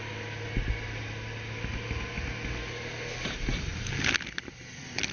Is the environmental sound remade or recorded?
recorded